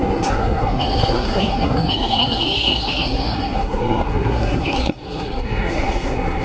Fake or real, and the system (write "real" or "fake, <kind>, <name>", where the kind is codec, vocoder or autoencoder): fake, codec, SNAC